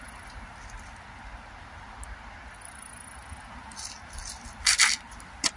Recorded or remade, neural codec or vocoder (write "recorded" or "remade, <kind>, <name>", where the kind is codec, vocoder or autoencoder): recorded